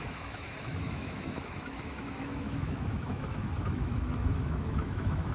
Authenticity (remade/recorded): remade